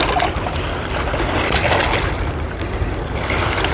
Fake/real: real